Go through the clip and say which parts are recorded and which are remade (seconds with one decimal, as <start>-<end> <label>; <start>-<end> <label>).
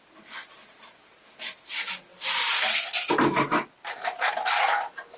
0.0-2.1 remade; 2.1-4.3 recorded; 4.3-5.2 remade